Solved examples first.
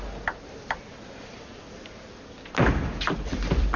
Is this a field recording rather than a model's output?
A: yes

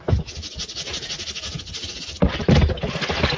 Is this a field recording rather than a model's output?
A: yes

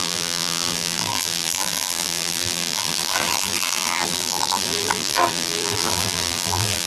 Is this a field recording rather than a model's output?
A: no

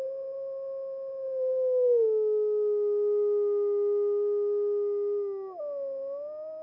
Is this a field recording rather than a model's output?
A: yes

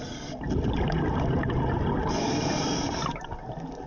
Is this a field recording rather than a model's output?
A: yes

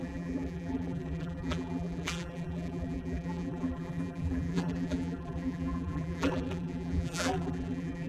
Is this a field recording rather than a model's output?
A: no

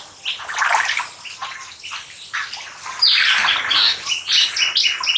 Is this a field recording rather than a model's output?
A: yes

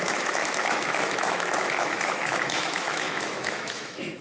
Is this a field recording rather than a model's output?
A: no